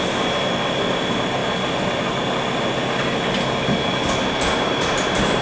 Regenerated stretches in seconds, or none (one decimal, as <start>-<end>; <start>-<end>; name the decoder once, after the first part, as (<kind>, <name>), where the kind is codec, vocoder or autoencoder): none